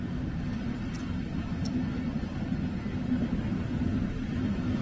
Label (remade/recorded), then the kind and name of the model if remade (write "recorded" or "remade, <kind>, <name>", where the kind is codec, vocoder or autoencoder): recorded